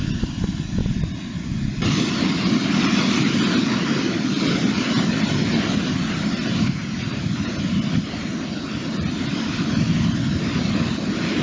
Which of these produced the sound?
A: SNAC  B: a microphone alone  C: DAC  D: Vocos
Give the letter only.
B